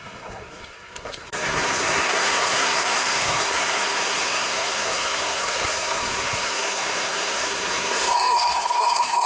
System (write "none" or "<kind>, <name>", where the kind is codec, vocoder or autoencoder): codec, SNAC